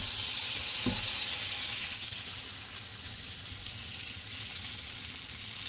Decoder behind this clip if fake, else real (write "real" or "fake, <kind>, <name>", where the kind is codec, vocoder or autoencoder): real